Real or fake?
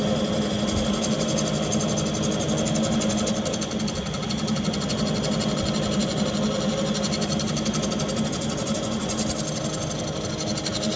real